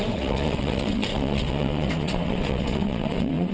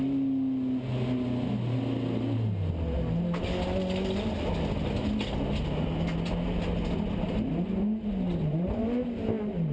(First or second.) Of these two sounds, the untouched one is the second